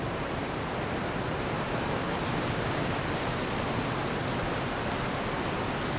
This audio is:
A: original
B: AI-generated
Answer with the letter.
A